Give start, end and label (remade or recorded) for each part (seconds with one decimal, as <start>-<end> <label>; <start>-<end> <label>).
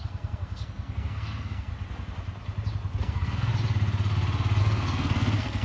0.0-1.7 remade; 1.7-3.0 recorded; 3.0-3.5 remade; 3.5-4.6 recorded; 4.6-5.6 remade